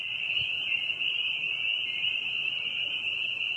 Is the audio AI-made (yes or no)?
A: no